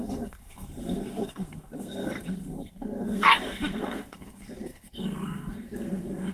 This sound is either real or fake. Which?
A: fake